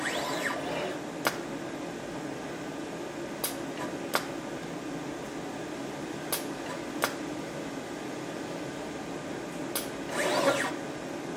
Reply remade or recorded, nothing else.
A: recorded